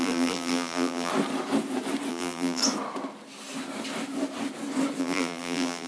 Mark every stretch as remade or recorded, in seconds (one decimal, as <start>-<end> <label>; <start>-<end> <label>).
0.0-1.1 remade; 1.1-2.1 recorded; 2.1-2.6 remade; 2.6-5.0 recorded; 5.0-5.9 remade